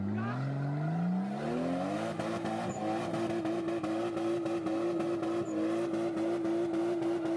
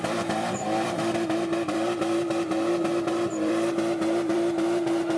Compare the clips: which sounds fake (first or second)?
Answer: second